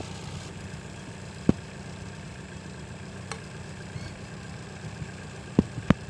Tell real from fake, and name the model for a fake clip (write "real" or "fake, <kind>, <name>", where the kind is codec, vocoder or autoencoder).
real